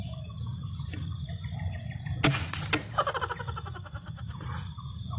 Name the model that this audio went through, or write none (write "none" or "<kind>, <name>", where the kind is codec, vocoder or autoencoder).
none